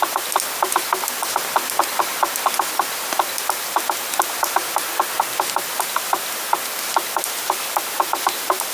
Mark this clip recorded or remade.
recorded